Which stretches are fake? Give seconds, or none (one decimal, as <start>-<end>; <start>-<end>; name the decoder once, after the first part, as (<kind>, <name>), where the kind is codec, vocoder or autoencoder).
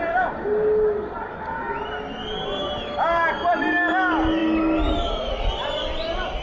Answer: 2.5-3.8 (vocoder, BigVGAN v2)